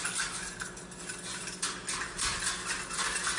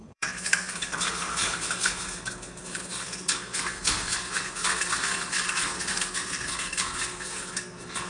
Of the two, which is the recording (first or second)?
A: first